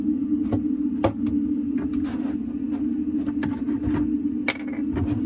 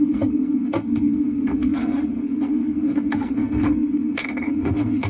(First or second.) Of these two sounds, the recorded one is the first